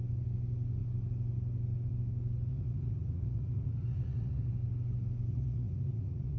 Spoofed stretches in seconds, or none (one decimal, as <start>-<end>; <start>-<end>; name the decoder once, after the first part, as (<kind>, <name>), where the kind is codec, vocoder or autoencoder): 2.5-4.5 (vocoder, Vocos); 5.3-6.4